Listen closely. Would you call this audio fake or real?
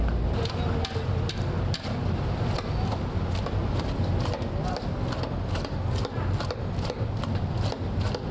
real